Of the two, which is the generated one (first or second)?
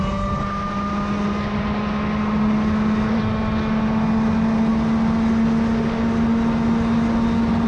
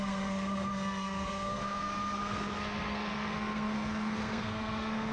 second